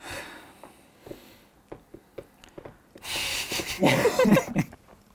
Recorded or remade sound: recorded